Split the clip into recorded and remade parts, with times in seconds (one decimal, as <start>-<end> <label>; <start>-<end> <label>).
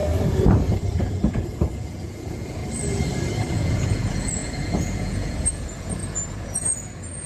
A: 0.0-1.0 recorded; 1.0-2.6 remade; 2.6-3.5 recorded; 3.5-7.3 remade